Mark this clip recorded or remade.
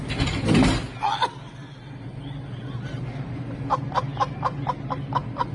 recorded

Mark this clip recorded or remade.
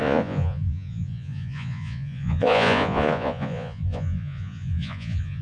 remade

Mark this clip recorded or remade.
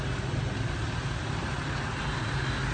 recorded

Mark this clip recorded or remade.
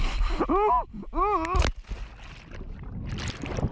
recorded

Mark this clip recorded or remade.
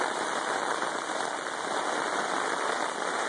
remade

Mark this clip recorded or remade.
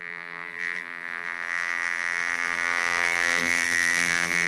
remade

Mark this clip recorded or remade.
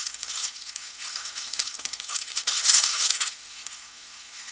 remade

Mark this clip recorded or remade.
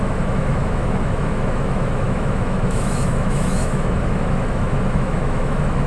remade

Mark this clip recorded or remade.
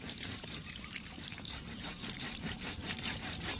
remade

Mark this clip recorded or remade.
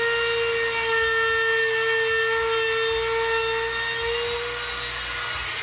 recorded